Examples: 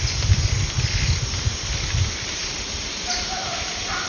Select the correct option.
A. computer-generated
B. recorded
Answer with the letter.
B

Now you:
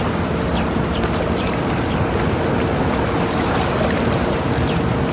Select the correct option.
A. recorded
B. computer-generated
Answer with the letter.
A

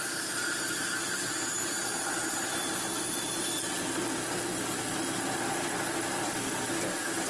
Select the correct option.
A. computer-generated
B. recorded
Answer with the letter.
B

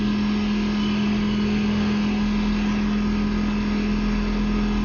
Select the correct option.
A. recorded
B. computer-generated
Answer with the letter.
A